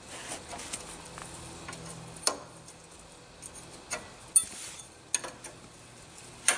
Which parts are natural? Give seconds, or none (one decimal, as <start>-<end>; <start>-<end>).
0.0-6.6